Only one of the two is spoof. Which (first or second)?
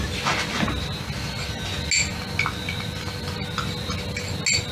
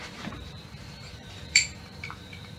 second